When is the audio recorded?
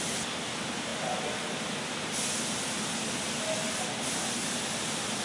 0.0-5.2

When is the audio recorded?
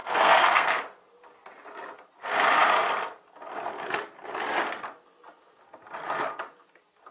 0.8-7.1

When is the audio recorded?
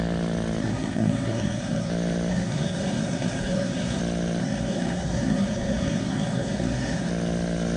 0.0-0.6; 1.9-2.3; 4.0-4.4; 7.1-7.8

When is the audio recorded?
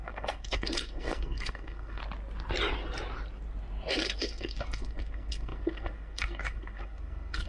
2.0-3.9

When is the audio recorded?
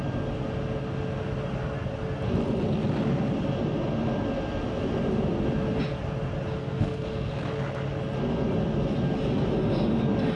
0.0-6.6; 7.3-10.4